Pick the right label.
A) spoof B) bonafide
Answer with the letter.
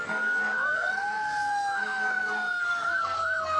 A